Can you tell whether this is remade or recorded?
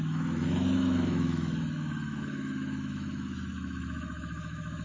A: remade